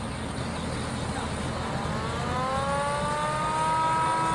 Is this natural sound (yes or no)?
yes